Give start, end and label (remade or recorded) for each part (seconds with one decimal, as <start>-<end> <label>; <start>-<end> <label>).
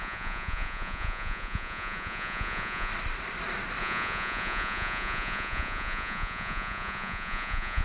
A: 0.0-2.9 remade; 2.9-3.8 recorded; 3.8-7.8 remade